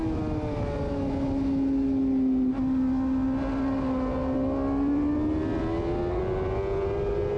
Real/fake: real